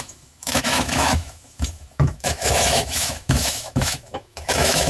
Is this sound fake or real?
fake